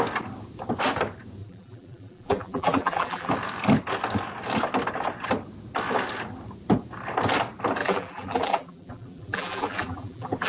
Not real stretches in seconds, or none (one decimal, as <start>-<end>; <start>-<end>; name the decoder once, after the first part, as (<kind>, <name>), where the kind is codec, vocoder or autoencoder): 1.4-3.3 (vocoder, BigVGAN v2); 7.8-10.5